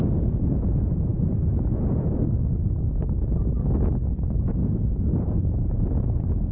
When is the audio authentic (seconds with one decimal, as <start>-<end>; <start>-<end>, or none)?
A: 1.1-4.5